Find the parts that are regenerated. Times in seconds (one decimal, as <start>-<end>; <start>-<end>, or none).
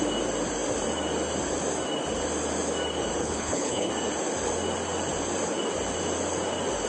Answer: 3.2-3.9